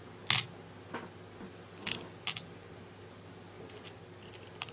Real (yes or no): yes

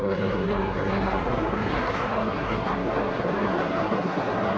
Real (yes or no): no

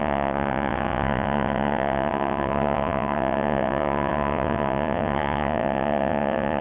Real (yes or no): no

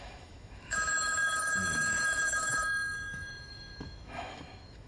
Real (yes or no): no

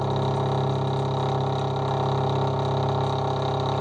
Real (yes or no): yes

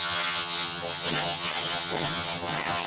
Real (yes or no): no